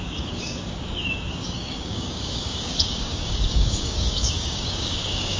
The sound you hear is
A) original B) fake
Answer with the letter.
B